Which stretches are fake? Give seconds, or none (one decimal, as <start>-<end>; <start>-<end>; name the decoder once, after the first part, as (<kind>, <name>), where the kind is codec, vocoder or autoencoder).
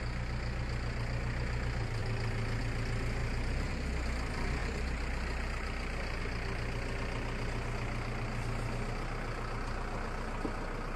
3.2-3.7 (vocoder, BigVGAN v2); 4.6-6.2